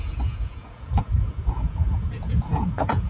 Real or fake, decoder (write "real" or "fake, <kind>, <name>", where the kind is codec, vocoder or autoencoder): fake, vocoder, Vocos